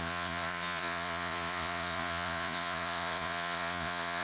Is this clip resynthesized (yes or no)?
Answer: yes